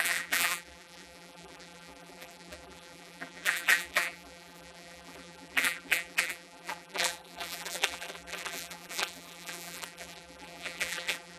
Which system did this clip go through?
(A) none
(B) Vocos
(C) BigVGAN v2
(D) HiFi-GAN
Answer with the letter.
C